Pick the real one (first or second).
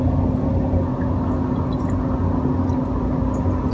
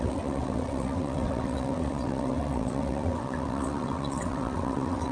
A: first